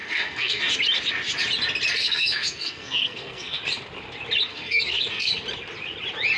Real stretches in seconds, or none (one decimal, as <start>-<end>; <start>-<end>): 0.6-2.0; 3.6-4.5; 5.3-6.4